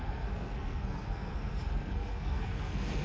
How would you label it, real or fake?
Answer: fake